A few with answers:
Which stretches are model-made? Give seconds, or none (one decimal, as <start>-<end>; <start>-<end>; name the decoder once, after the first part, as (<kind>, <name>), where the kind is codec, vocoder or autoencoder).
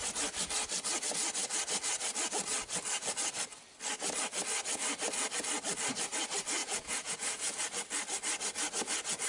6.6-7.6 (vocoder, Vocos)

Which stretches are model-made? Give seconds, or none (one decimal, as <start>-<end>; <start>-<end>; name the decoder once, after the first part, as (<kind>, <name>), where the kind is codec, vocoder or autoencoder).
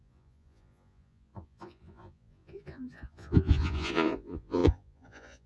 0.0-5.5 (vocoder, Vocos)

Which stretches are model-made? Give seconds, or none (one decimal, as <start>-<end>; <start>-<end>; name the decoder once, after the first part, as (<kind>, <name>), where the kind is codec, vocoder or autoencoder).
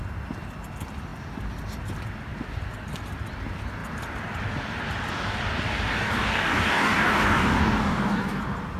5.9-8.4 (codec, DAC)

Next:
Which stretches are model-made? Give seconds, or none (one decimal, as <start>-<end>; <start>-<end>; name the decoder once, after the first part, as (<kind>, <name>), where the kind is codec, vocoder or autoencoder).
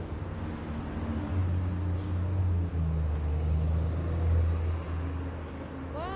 none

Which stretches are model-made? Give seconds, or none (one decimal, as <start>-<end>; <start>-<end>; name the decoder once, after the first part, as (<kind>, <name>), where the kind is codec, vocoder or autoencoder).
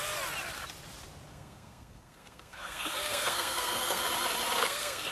1.3-4.0 (codec, SNAC); 4.6-5.1